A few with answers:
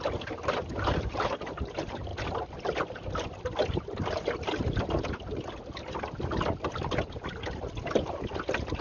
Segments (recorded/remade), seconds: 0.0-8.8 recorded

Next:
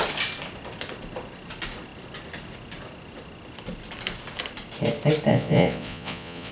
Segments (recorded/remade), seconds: 0.0-5.3 recorded; 5.3-6.5 remade

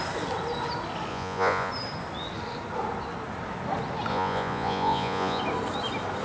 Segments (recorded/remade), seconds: 0.0-1.1 recorded; 1.1-1.7 remade; 1.7-4.1 recorded; 4.1-5.4 remade; 5.4-6.2 recorded

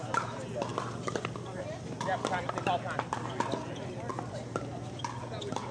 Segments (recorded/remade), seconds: 0.0-5.7 recorded

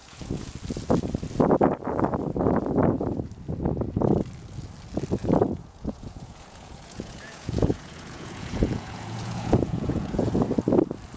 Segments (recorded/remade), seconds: 0.0-0.5 remade; 0.5-5.2 recorded; 5.2-10.3 remade; 10.3-11.2 recorded